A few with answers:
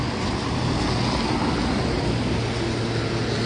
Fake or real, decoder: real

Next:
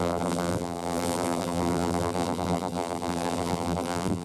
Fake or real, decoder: fake, vocoder, BigVGAN v2